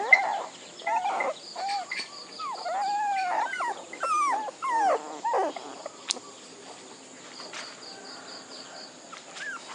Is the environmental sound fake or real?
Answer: real